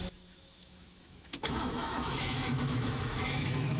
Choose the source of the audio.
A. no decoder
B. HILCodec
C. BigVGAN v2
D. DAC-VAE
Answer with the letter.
D